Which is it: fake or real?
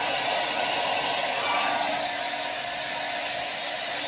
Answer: real